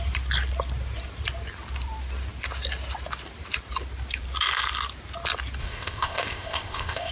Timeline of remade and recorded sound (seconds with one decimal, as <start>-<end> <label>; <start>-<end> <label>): 0.0-5.6 recorded; 5.6-7.1 remade

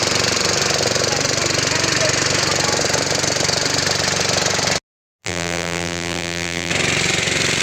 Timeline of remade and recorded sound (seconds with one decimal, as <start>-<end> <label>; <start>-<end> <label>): 0.0-5.2 recorded; 5.2-6.7 remade; 6.7-7.6 recorded

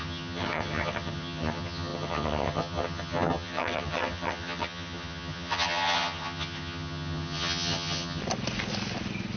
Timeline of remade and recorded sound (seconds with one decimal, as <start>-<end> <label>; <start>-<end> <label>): 0.0-8.2 remade; 8.2-9.4 recorded

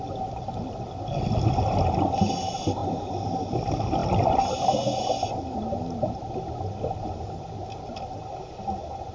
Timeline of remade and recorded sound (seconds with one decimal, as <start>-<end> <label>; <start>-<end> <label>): 0.0-9.1 recorded

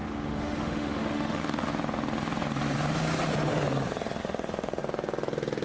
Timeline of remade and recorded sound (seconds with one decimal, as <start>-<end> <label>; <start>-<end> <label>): 0.0-1.7 remade; 1.7-4.2 recorded; 4.2-4.8 remade; 4.8-5.6 recorded

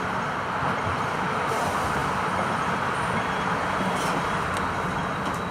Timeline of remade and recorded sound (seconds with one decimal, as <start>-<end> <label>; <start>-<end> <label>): 0.0-5.5 remade

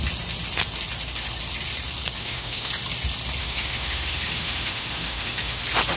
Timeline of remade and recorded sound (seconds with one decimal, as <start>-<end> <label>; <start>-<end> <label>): 0.0-2.2 recorded; 2.2-2.7 remade; 2.7-3.4 recorded; 3.4-5.6 remade; 5.6-6.0 recorded

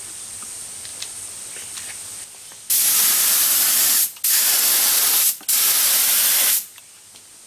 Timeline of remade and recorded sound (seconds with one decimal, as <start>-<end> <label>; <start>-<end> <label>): 0.0-7.5 recorded